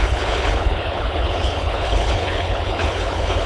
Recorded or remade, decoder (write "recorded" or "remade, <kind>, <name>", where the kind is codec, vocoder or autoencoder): remade, codec, HILCodec